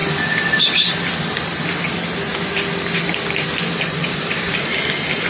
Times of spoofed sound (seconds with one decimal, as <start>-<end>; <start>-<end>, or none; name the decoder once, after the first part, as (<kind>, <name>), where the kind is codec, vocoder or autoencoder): 4.1-4.6 (codec, DAC)